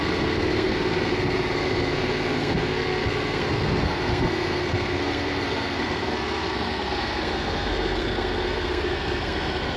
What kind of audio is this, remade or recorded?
remade